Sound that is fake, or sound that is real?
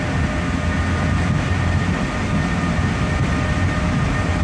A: real